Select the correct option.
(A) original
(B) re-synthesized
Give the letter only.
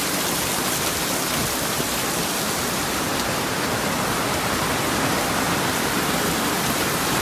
A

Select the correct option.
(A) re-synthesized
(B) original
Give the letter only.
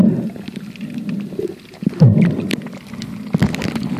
B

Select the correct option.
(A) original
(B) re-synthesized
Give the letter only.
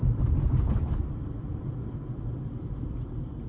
B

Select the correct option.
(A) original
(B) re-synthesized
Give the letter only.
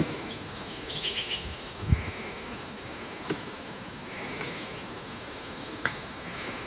B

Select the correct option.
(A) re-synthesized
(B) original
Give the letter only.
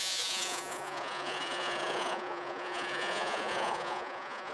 A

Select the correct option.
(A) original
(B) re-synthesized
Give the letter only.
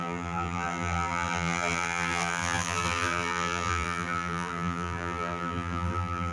B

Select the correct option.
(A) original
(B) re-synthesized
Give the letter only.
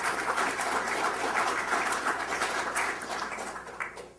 B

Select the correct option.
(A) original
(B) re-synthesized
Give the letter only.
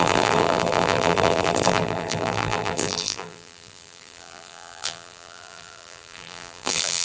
B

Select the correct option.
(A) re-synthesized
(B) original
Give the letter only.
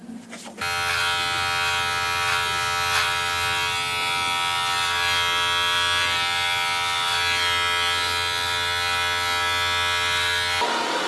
B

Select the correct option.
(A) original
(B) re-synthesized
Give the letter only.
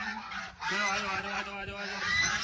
B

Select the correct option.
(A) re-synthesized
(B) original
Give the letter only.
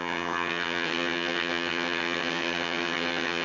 A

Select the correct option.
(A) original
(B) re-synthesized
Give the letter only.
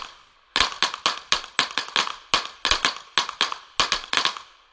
A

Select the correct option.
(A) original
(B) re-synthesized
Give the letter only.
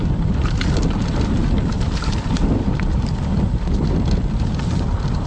A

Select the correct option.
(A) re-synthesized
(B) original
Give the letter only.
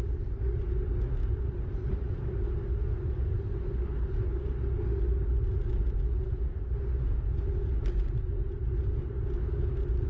B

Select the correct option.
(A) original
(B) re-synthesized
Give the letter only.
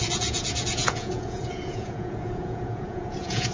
B